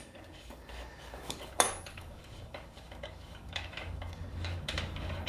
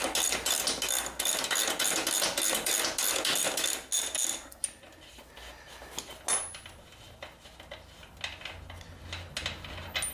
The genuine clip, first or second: second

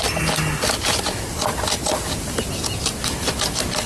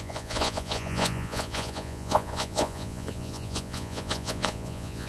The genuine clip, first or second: first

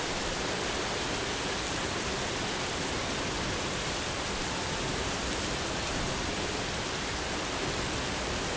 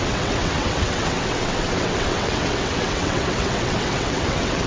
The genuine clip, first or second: first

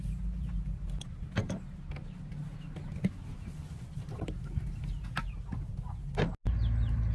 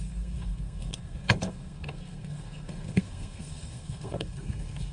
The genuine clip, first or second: first